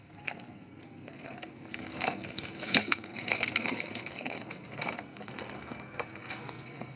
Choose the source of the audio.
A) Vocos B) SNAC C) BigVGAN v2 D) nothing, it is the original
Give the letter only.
B